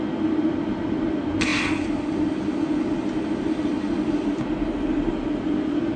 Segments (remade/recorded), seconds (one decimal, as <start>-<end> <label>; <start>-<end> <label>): 0.0-6.0 recorded